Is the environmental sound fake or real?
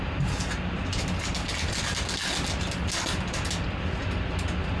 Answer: real